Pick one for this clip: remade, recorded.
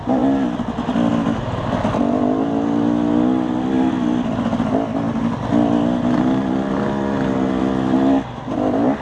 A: recorded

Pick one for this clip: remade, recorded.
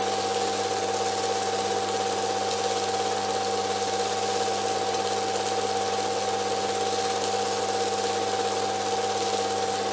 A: recorded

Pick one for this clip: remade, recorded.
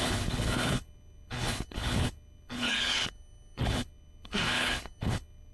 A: remade